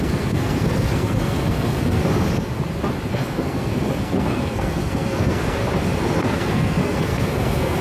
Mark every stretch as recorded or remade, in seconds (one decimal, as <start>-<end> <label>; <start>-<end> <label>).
0.0-2.0 remade; 2.0-3.1 recorded; 3.1-5.6 remade; 5.6-6.2 recorded; 6.2-7.8 remade